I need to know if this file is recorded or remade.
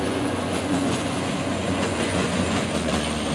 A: remade